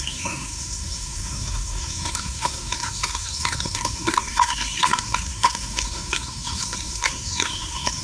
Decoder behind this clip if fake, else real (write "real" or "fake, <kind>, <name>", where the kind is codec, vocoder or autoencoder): fake, codec, SNAC